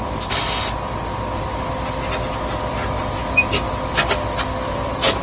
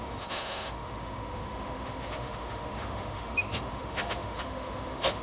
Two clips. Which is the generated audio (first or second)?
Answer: second